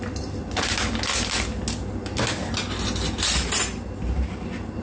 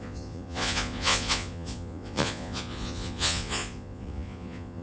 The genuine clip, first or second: first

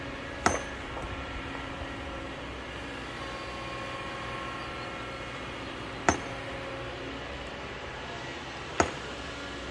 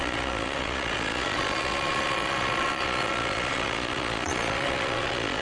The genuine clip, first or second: first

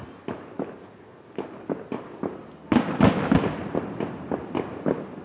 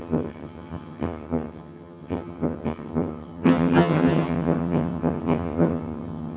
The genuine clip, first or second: first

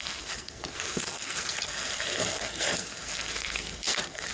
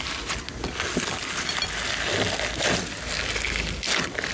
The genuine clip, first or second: second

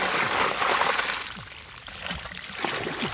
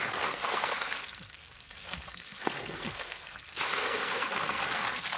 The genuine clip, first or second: first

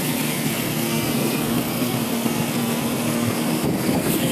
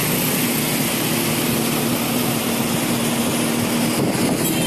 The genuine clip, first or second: second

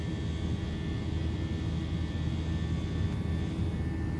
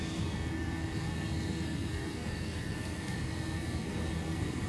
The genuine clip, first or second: first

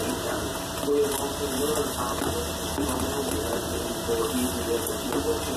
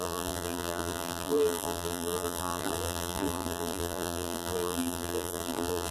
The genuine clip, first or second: first